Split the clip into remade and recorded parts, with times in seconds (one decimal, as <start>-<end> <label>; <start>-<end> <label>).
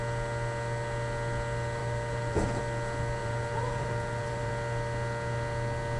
0.0-1.8 recorded; 1.8-2.6 remade; 2.6-3.2 recorded; 3.2-4.5 remade; 4.5-6.0 recorded